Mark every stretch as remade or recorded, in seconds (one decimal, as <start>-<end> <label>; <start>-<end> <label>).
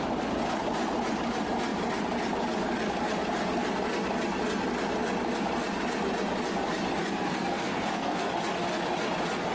0.0-7.0 recorded; 7.0-8.3 remade; 8.3-9.5 recorded